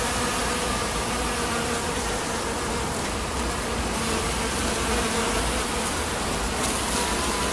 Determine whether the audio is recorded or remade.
recorded